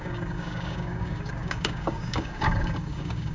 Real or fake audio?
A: fake